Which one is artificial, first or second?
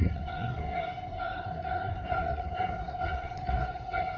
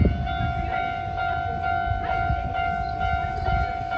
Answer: first